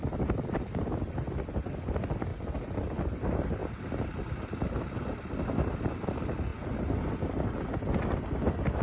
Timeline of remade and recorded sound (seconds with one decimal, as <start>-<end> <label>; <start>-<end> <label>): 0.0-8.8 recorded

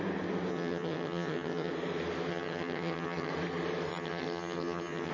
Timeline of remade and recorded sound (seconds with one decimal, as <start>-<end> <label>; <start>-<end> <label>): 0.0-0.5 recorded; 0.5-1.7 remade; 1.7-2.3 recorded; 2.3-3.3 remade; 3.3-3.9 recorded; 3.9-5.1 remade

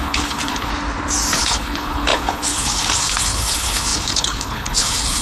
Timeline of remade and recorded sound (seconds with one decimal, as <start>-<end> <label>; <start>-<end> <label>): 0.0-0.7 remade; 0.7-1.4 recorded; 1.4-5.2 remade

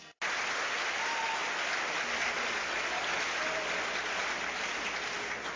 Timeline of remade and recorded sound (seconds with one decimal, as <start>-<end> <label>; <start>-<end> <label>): 0.0-5.6 recorded

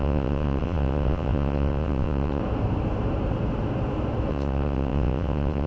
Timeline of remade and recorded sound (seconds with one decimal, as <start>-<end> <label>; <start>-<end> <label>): 0.0-2.4 remade; 2.4-4.3 recorded; 4.3-5.7 remade

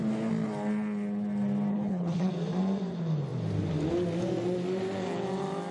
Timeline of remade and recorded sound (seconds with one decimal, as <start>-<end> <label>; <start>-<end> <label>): 0.0-1.7 recorded; 1.7-2.3 remade; 2.3-5.7 recorded